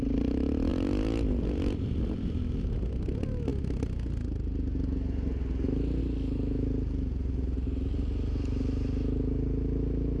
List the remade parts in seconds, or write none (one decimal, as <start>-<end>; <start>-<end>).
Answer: none